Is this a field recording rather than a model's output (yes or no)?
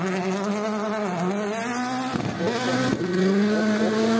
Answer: yes